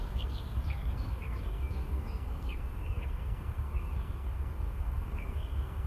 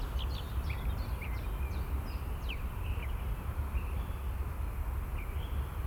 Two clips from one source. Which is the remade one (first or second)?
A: first